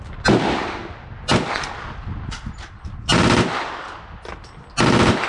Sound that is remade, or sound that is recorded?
recorded